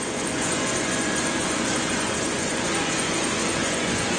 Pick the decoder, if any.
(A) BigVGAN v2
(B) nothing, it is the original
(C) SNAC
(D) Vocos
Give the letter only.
D